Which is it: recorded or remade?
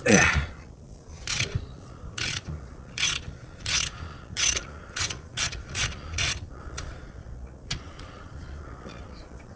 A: remade